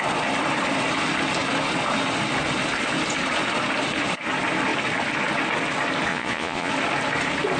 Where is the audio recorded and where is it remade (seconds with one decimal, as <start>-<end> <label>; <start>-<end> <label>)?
0.0-6.1 recorded; 6.1-6.7 remade; 6.7-7.6 recorded